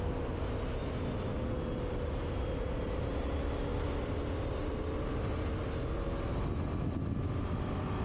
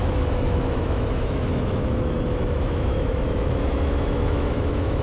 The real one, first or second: first